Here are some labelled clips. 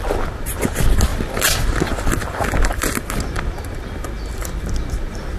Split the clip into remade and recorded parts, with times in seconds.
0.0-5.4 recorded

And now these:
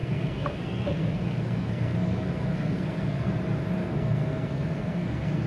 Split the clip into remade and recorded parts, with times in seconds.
0.0-3.3 remade; 3.3-3.8 recorded; 3.8-5.5 remade

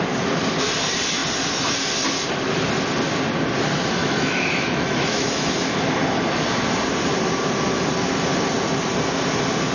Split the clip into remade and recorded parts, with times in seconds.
0.0-4.0 recorded; 4.0-5.6 remade; 5.6-9.7 recorded

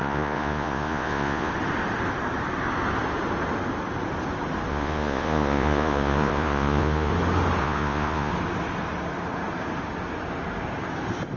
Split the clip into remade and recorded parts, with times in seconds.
0.0-1.5 remade; 1.5-4.7 recorded; 4.7-7.1 remade; 7.1-7.6 recorded; 7.6-8.3 remade; 8.3-11.4 recorded

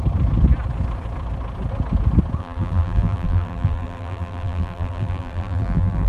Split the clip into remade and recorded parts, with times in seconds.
0.0-2.4 recorded; 2.4-6.1 remade

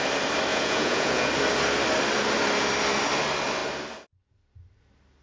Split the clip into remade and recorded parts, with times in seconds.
0.0-0.5 recorded; 0.5-1.3 remade; 1.3-5.2 recorded

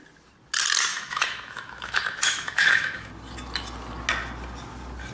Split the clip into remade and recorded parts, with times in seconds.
0.0-0.9 recorded; 0.9-3.1 remade; 3.1-5.1 recorded